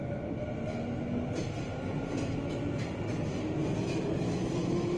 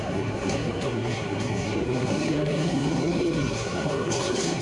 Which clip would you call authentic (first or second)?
first